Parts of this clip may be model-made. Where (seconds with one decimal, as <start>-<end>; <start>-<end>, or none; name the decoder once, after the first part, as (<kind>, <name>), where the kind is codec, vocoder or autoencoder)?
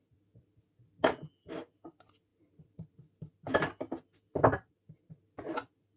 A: none